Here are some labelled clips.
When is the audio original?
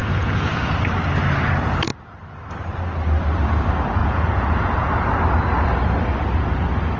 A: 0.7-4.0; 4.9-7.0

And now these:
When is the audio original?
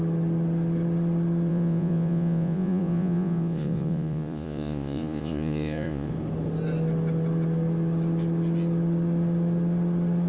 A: 0.0-1.5; 6.1-10.3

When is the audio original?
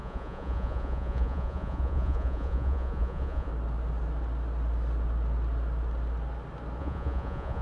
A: 3.5-6.8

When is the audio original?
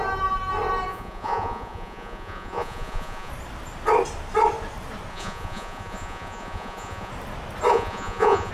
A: 0.0-0.9; 3.3-5.1; 7.1-7.7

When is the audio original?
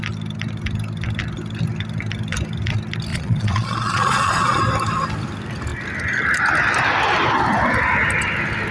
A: 0.0-3.1; 4.6-8.7